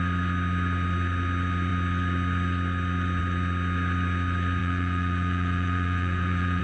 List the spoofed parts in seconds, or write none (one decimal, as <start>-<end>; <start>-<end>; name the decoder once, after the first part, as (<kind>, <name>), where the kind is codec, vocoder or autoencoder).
4.6-6.6 (vocoder, Vocos)